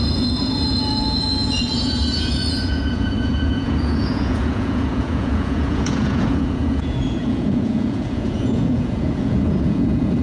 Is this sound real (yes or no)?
no